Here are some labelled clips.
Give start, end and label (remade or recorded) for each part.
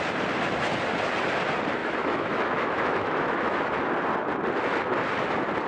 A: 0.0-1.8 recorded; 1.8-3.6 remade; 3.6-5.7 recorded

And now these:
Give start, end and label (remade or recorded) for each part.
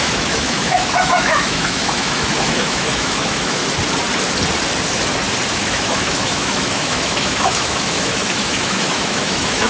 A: 0.0-3.6 remade; 3.6-5.5 recorded; 5.5-9.7 remade